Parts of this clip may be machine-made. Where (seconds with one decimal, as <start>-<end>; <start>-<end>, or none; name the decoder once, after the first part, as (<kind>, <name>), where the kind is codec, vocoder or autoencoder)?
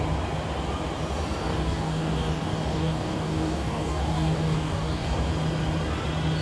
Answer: 1.5-5.3 (codec, DAC)